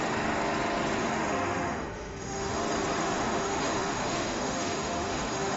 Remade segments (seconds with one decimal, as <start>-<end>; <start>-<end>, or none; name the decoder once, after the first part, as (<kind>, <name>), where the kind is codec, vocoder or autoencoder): 1.0-2.6 (autoencoder, DAC-VAE); 3.0-5.6